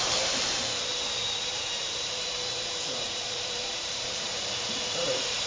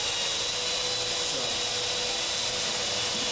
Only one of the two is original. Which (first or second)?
second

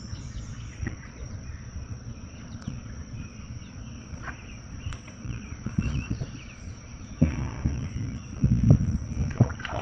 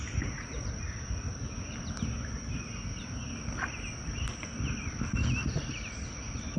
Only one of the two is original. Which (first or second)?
second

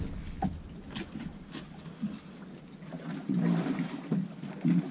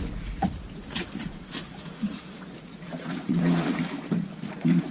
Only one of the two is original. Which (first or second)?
first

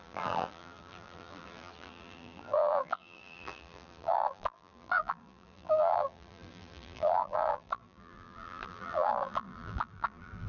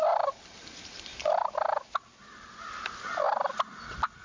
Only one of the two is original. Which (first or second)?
second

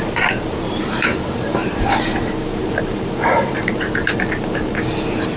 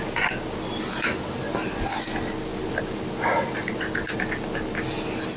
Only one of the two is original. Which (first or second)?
second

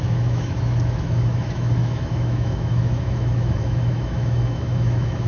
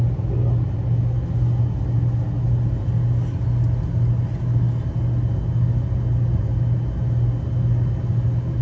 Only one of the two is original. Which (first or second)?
second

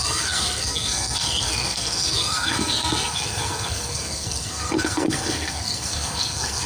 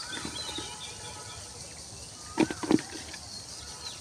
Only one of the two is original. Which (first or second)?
second